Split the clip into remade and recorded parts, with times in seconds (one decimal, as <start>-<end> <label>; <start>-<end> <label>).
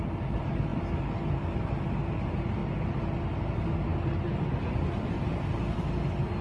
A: 0.0-6.4 recorded